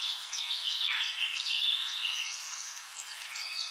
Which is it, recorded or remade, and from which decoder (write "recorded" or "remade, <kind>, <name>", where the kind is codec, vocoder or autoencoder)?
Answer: remade, codec, SNAC